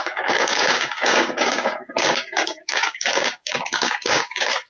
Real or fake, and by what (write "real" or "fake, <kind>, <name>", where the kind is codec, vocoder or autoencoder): fake, codec, DAC